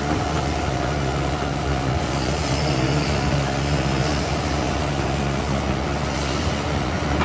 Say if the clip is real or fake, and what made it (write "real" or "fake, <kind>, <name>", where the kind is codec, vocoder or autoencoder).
fake, vocoder, Vocos